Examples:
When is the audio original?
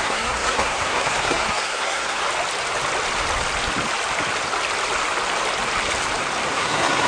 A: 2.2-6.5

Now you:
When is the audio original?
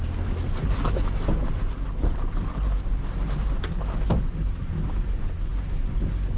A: 0.0-6.4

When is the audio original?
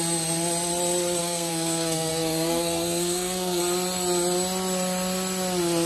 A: 0.0-1.2; 3.6-5.9